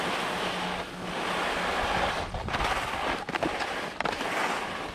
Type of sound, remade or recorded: recorded